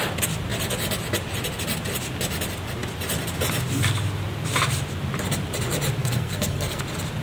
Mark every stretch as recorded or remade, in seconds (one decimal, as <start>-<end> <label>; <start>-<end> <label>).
0.0-6.0 recorded; 6.0-6.8 remade; 6.8-7.2 recorded